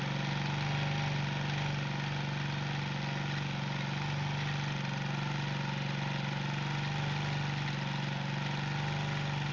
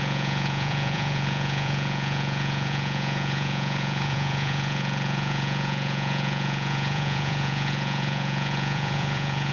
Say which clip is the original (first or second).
first